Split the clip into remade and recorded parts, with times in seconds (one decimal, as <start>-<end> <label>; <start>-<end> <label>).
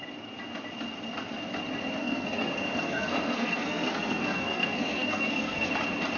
0.0-2.0 recorded; 2.0-5.7 remade; 5.7-6.2 recorded